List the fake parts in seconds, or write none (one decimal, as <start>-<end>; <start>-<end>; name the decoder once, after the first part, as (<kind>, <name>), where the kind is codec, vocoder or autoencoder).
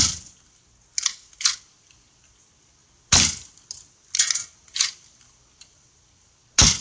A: none